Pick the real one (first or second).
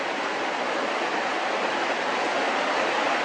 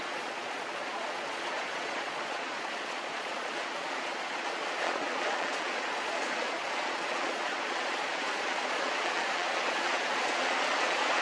first